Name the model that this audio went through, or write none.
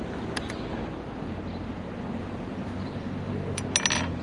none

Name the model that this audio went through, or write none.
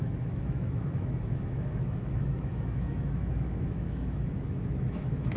autoencoder, DAC-VAE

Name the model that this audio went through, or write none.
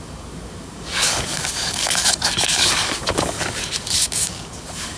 codec, DAC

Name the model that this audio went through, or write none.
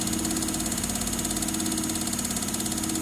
none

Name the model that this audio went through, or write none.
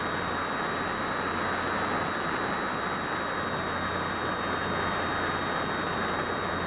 none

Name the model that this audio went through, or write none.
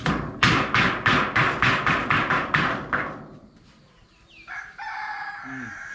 none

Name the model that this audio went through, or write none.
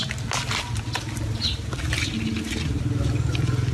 none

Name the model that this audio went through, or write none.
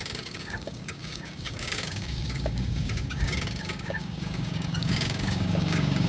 codec, DAC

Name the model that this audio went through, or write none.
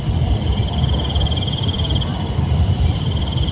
vocoder, BigVGAN v2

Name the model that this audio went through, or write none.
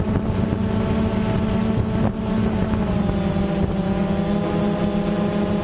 none